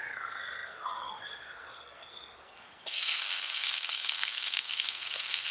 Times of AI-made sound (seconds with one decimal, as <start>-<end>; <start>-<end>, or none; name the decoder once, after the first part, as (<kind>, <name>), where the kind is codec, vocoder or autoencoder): 0.0-5.5 (codec, SNAC)